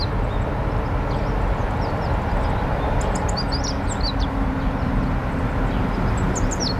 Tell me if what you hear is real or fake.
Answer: real